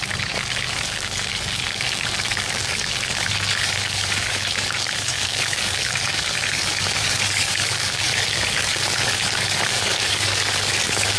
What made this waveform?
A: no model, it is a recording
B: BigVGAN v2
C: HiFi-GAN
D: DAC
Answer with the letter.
D